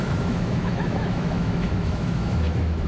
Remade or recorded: remade